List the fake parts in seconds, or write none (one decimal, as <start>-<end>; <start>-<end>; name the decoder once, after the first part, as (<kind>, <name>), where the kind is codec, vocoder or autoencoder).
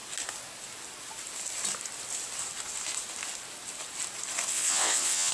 4.5-5.3 (vocoder, WaveNeXt)